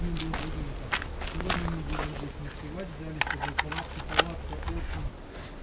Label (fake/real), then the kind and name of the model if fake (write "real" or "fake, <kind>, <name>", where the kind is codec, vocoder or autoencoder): real